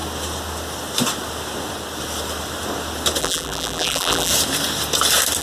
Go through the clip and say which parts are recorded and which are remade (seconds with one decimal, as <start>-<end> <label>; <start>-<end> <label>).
0.0-3.2 recorded; 3.2-4.3 remade; 4.3-5.4 recorded